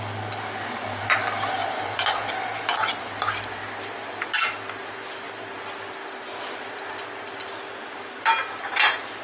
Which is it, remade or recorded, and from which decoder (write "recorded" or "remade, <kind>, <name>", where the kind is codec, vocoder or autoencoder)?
recorded